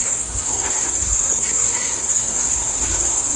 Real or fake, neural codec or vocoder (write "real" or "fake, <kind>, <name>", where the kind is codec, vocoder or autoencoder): fake, codec, SNAC